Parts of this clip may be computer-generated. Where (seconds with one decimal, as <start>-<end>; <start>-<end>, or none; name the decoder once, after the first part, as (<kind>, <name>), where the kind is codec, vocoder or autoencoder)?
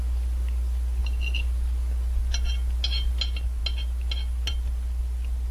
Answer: none